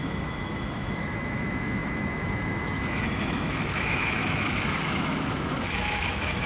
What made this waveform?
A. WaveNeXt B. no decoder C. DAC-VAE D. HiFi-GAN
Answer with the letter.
C